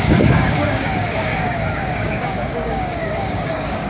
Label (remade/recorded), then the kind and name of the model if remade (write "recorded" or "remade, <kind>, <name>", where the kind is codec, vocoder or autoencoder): remade, codec, DAC